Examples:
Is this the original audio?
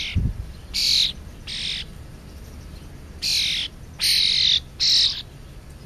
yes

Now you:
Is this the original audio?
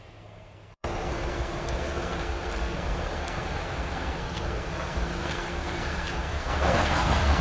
no